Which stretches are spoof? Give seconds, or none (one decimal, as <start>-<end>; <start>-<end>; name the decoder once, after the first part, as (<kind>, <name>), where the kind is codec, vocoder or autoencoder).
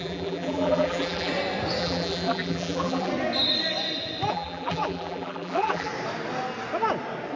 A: 0.0-1.3 (vocoder, BigVGAN v2); 1.8-3.1; 4.3-5.9